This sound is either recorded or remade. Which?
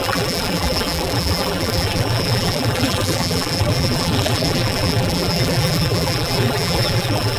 remade